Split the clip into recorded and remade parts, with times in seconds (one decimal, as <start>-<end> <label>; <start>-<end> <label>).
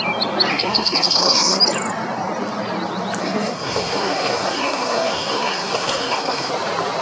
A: 0.0-0.5 recorded; 0.5-1.6 remade; 1.6-3.2 recorded; 3.2-6.5 remade; 6.5-7.0 recorded